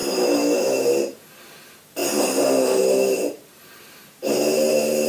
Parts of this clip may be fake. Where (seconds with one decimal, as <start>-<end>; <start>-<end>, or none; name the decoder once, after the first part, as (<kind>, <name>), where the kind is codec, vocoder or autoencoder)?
0.0-0.6 (autoencoder, DAC-VAE)